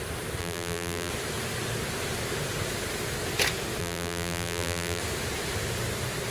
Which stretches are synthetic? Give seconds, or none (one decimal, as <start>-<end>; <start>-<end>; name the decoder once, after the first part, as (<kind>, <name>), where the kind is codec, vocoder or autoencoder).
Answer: 0.4-1.1 (vocoder, BigVGAN v2); 3.8-5.0